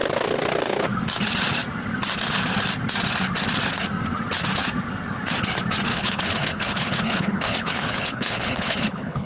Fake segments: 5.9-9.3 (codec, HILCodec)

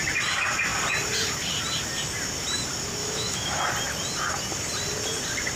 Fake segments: 3.0-3.6 (autoencoder, DAC-VAE)

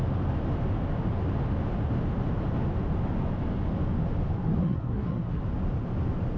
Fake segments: 4.6-5.4 (codec, SNAC)

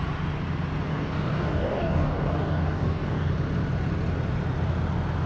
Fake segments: 0.9-3.3 (codec, DAC)

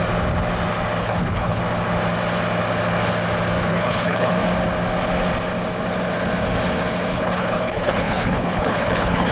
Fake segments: 1.0-1.6 (codec, HILCodec); 3.7-4.3; 7.1-9.3

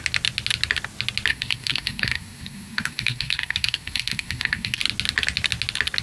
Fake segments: 1.3-4.8 (codec, SNAC)